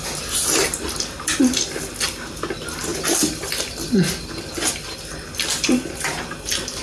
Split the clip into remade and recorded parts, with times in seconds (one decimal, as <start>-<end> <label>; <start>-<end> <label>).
0.0-6.8 recorded